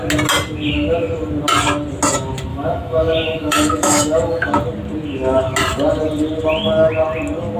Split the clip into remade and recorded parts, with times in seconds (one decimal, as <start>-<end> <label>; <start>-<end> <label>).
0.0-2.5 recorded; 2.5-4.5 remade; 4.5-7.6 recorded